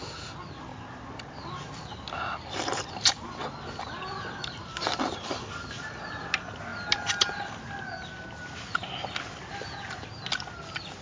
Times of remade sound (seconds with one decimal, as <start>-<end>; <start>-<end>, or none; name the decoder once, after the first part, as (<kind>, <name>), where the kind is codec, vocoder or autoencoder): none